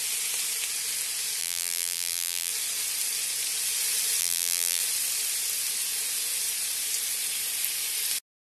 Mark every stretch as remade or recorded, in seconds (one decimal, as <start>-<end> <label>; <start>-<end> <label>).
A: 0.0-1.4 recorded; 1.4-2.5 remade; 2.5-4.2 recorded; 4.2-4.8 remade; 4.8-8.5 recorded